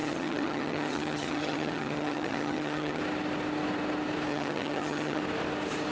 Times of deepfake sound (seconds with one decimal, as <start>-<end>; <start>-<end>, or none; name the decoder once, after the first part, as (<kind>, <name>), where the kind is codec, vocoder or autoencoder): 0.0-3.0 (vocoder, HiFi-GAN); 4.3-5.2